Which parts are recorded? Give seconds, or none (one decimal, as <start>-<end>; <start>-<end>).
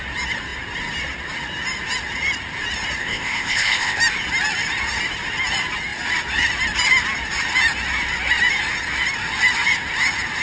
0.0-3.0; 4.0-10.4